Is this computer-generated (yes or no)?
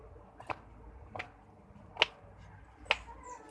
no